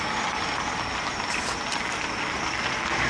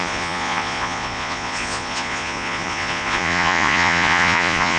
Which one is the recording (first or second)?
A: first